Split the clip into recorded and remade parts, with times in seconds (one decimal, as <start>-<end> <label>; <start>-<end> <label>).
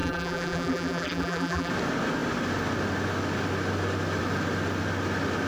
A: 0.0-1.7 remade; 1.7-5.5 recorded